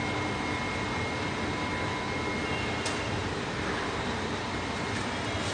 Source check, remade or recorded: recorded